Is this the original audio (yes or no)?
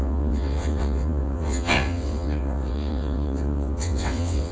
no